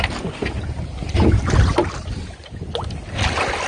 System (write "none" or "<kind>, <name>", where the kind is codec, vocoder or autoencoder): none